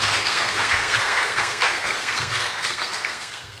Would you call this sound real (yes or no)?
no